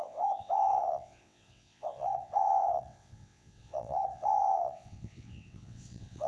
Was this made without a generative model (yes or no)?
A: no